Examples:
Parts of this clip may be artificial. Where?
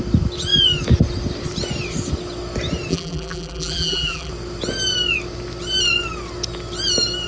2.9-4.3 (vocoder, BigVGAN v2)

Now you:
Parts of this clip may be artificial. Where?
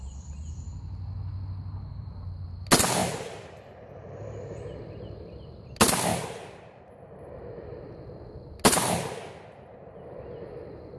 3.0-4.8 (vocoder, BigVGAN v2); 6.1-7.0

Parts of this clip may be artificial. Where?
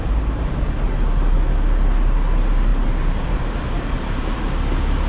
2.7-4.4 (vocoder, BigVGAN v2)